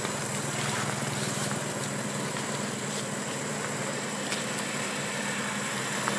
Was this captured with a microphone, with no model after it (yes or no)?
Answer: yes